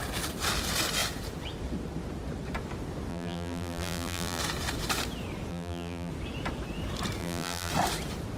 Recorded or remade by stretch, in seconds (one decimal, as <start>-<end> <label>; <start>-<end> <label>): 0.0-3.1 recorded; 3.1-4.4 remade; 4.4-5.5 recorded; 5.5-6.1 remade; 6.1-7.2 recorded; 7.2-7.7 remade; 7.7-8.4 recorded